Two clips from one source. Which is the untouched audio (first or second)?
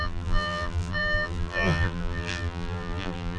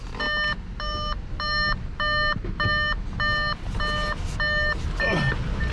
second